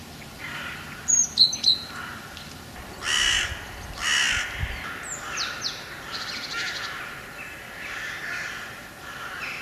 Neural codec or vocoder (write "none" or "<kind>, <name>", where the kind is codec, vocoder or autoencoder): vocoder, BigVGAN v2